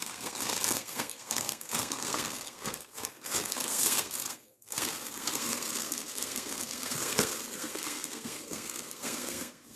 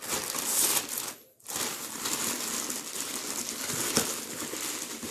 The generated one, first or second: first